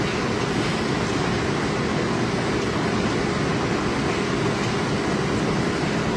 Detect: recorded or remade recorded